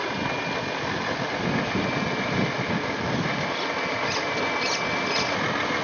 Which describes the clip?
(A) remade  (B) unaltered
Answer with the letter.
B